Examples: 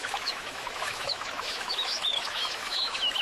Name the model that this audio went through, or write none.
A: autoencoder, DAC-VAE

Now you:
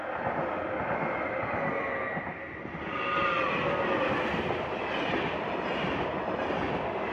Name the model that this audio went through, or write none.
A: none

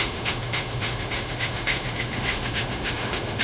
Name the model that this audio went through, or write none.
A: autoencoder, DAC-VAE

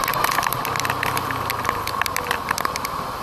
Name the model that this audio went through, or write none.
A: none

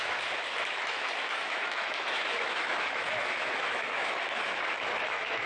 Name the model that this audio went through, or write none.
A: autoencoder, DAC-VAE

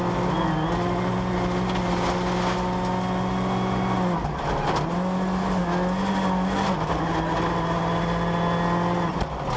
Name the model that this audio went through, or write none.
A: none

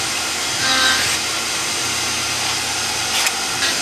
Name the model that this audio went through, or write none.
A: none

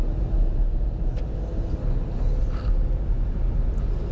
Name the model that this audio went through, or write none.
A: none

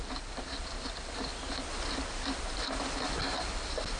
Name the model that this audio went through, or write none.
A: none